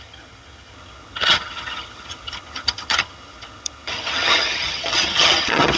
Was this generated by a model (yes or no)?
yes